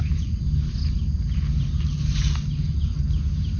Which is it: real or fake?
real